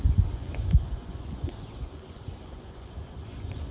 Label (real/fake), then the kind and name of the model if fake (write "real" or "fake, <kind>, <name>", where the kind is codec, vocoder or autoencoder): fake, vocoder, Vocos